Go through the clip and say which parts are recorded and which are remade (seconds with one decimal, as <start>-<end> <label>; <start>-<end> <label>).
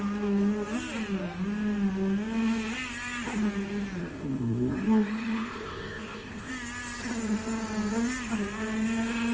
0.0-4.0 recorded; 4.0-6.5 remade; 6.5-9.3 recorded